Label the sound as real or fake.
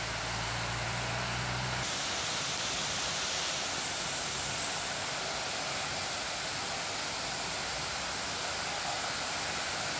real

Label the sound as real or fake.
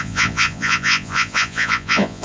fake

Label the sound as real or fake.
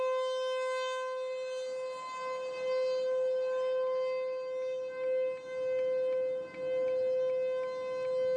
real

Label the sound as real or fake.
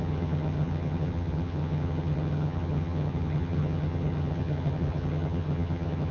fake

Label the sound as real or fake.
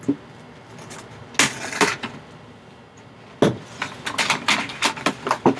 real